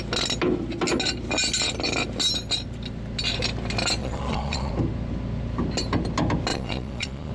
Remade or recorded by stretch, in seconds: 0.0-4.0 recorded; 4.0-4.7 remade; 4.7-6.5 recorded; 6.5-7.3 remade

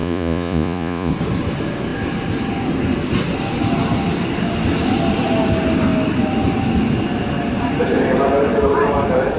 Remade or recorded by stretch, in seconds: 0.0-1.1 remade; 1.1-9.4 recorded

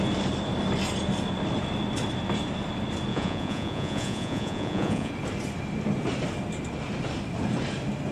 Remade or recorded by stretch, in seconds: 0.0-3.1 recorded; 3.1-5.1 remade; 5.1-8.1 recorded

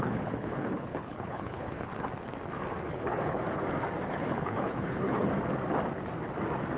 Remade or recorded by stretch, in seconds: 0.0-1.9 remade; 1.9-2.9 recorded; 2.9-3.4 remade; 3.4-4.1 recorded; 4.1-5.3 remade; 5.3-6.8 recorded

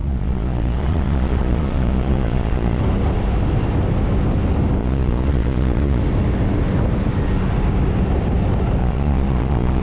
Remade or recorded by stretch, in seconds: 0.0-2.8 remade; 2.8-4.8 recorded; 4.8-6.0 remade; 6.0-8.8 recorded; 8.8-9.8 remade

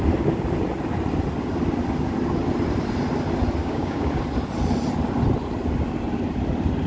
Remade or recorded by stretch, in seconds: 0.0-3.6 recorded; 3.6-4.1 remade; 4.1-6.9 recorded